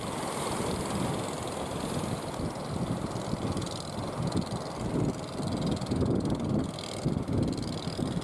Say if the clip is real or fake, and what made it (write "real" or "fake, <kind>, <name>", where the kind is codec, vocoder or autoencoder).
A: real